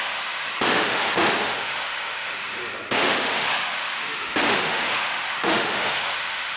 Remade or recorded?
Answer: remade